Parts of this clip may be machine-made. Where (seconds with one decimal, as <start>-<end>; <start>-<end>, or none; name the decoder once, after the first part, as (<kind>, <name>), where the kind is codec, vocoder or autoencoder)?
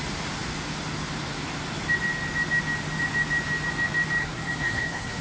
4.2-5.2 (codec, SNAC)